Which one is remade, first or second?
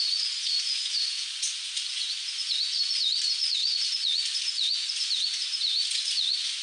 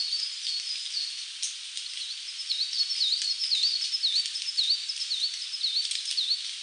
first